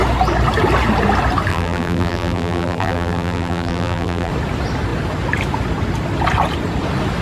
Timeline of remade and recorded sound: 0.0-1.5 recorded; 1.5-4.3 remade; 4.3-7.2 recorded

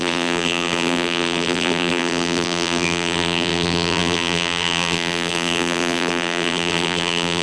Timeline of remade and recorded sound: 0.0-7.4 remade

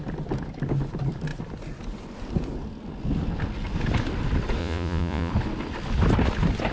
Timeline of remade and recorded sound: 0.0-4.6 recorded; 4.6-5.3 remade; 5.3-6.7 recorded